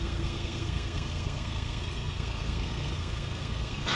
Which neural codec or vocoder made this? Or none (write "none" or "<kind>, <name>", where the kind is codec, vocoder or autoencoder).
codec, SNAC